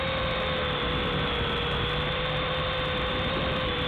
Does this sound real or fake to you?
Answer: fake